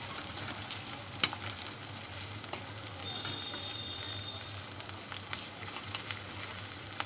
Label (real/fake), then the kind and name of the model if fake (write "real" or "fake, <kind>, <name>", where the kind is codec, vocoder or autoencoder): real